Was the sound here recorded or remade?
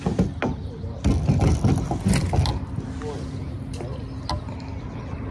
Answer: recorded